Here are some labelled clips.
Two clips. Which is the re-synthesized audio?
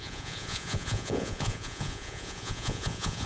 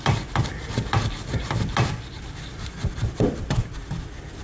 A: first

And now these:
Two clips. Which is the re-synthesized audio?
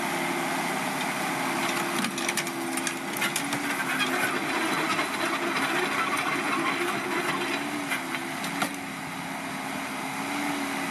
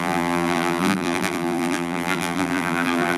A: second